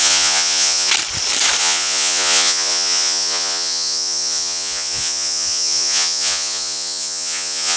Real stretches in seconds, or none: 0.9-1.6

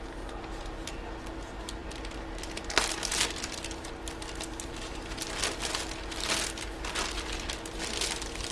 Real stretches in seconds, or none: 0.0-8.5

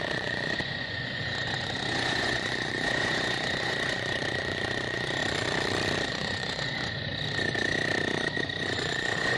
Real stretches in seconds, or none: 5.2-6.1; 7.1-8.6

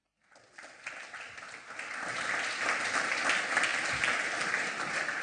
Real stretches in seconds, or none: 0.0-5.2

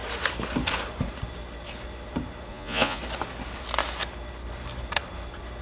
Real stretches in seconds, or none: 0.0-2.5; 3.0-5.6

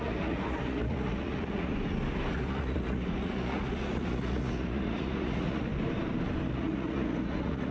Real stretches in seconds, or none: 1.7-2.3; 5.7-6.5